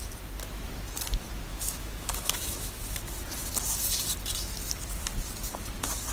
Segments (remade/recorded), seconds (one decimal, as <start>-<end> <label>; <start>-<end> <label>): 0.0-1.5 recorded; 1.5-2.8 remade; 2.8-6.1 recorded